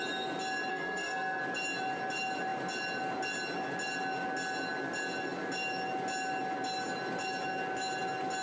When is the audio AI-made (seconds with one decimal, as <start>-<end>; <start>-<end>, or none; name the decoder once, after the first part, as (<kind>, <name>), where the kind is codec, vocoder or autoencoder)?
0.7-1.4 (codec, SNAC)